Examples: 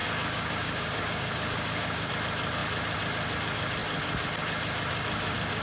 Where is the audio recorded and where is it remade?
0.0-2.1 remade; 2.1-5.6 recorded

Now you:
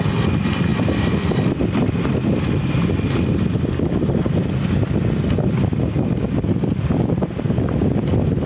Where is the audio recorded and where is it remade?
0.0-8.5 recorded